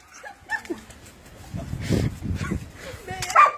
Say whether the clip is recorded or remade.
recorded